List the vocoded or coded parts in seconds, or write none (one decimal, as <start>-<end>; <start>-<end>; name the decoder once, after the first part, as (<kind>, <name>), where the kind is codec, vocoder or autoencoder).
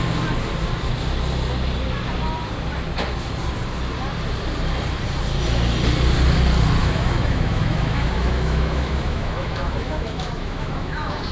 6.8-11.3 (autoencoder, DAC-VAE)